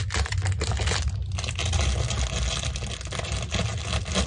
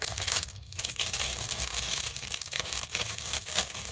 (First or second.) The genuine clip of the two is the first